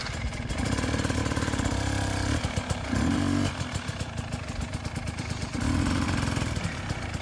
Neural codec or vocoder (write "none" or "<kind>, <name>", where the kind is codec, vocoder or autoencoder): vocoder, BigVGAN v2